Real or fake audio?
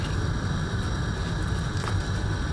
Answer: real